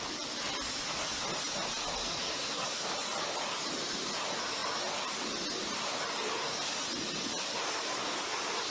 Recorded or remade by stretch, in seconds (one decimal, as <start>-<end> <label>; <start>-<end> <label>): 0.0-2.0 recorded; 2.0-2.8 remade; 2.8-8.7 recorded